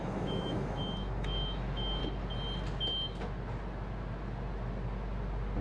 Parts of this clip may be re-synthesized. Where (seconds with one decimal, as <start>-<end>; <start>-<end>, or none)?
0.0-2.0